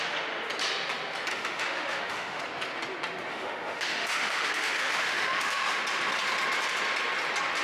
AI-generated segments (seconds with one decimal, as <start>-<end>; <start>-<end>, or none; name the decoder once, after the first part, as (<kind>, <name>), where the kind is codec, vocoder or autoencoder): 1.3-2.4 (autoencoder, DAC-VAE); 3.3-5.8